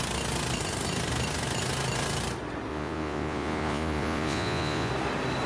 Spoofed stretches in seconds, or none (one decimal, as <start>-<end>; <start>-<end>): 2.7-4.9